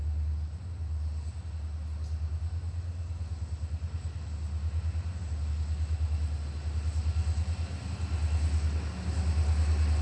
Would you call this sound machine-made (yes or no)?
no